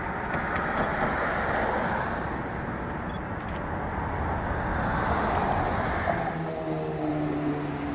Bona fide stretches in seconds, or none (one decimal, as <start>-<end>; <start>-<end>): 0.0-7.9